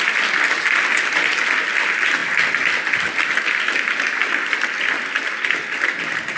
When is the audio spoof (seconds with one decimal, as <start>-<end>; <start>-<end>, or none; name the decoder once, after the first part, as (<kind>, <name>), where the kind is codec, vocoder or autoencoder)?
none